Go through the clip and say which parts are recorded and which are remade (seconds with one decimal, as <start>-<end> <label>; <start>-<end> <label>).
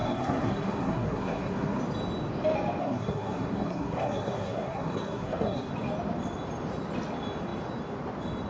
0.0-1.8 remade; 1.8-2.8 recorded; 2.8-5.7 remade; 5.7-8.5 recorded